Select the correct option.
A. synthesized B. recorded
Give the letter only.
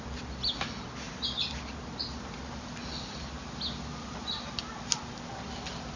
B